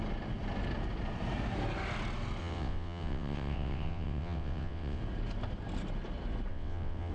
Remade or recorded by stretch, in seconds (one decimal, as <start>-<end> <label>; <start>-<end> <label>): 0.0-2.4 recorded; 2.4-5.0 remade; 5.0-6.5 recorded; 6.5-7.1 remade